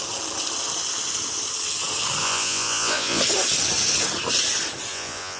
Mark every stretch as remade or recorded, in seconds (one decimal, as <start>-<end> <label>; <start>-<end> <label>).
0.0-2.2 recorded; 2.2-3.2 remade; 3.2-4.9 recorded; 4.9-5.4 remade